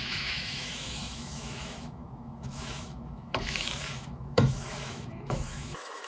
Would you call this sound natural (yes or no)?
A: no